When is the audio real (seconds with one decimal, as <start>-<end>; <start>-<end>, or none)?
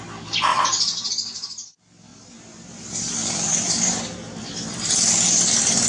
0.0-0.5; 1.1-2.1; 4.0-5.9